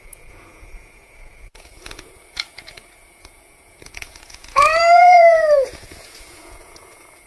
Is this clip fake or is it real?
fake